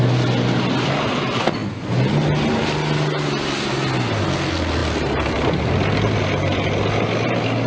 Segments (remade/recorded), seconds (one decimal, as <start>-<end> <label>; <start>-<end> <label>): 0.0-7.7 recorded